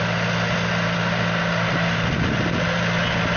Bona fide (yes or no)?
yes